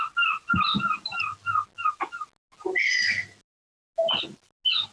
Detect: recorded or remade recorded